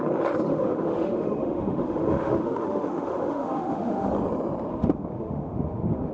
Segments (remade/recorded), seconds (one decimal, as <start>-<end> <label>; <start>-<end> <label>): 0.0-0.5 recorded; 0.5-4.1 remade; 4.1-4.7 recorded; 4.7-6.1 remade

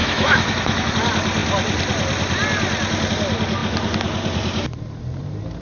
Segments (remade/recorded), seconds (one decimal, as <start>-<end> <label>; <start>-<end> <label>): 0.0-0.9 remade; 0.9-5.6 recorded

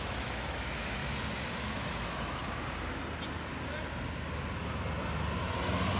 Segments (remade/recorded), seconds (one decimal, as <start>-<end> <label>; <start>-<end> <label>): 0.0-1.0 remade; 1.0-1.6 recorded; 1.6-2.4 remade; 2.4-6.0 recorded

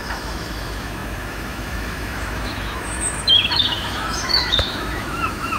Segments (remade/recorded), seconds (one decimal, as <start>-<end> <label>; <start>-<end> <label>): 0.0-5.6 remade

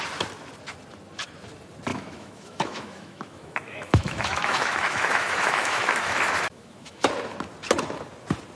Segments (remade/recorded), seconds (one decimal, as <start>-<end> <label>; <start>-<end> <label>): 0.0-1.9 recorded; 1.9-7.1 remade; 7.1-8.6 recorded